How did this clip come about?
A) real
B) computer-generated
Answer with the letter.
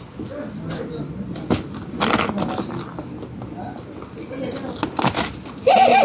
A